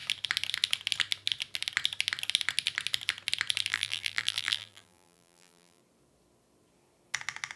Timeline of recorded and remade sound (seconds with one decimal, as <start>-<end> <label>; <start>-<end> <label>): 0.0-3.7 recorded; 3.7-5.8 remade; 5.8-7.6 recorded